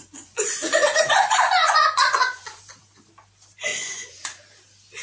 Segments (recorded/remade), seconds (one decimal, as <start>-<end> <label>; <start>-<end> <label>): 0.0-2.6 remade; 2.6-3.7 recorded; 3.7-4.4 remade; 4.4-5.0 recorded